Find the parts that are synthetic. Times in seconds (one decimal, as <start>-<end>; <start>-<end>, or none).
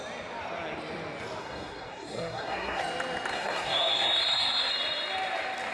1.4-2.8; 3.3-4.7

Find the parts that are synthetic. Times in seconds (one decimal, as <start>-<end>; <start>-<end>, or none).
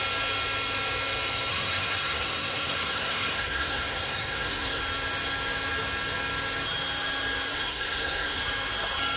1.5-4.8; 7.5-8.4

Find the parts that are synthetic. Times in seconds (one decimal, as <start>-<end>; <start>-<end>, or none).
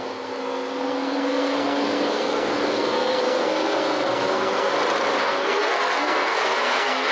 0.0-4.7; 5.2-7.1